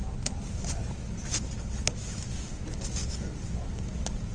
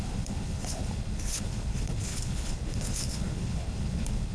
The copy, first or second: second